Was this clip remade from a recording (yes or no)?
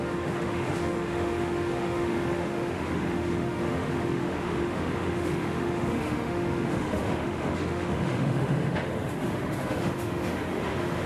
yes